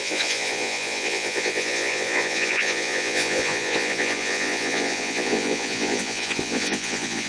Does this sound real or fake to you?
fake